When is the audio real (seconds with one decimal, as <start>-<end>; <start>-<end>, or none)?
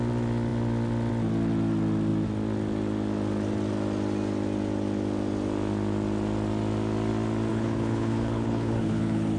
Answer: 0.0-7.5